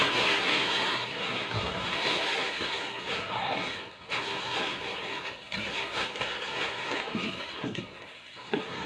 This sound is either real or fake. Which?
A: fake